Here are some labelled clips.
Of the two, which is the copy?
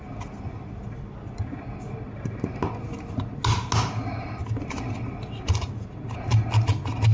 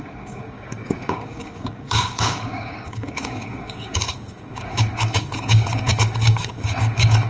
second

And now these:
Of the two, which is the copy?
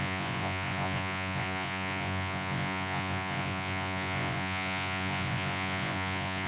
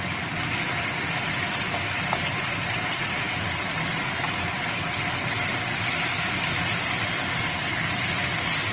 first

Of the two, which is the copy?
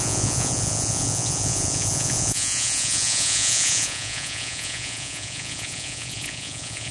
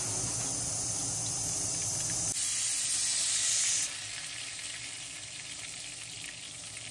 first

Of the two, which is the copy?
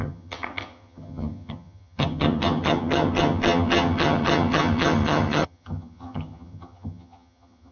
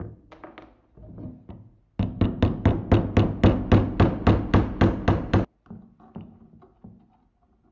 first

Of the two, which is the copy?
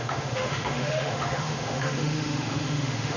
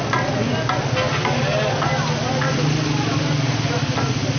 first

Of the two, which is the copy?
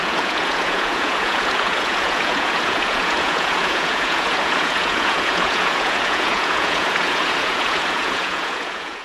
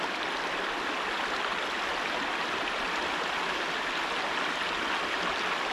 first